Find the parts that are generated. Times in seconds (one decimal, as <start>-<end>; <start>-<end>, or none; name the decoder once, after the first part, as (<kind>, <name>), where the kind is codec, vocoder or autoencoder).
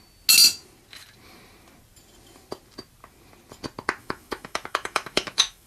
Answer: 4.0-5.7 (autoencoder, DAC-VAE)